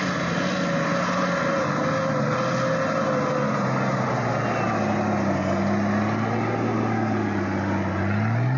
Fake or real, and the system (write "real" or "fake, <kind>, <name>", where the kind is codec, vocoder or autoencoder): real